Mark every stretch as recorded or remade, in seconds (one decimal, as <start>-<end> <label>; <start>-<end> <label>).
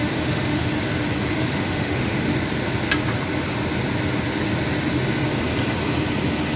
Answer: 0.0-0.7 remade; 0.7-1.3 recorded; 1.3-2.3 remade; 2.3-6.6 recorded